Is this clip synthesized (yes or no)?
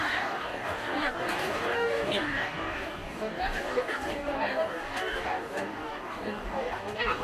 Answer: yes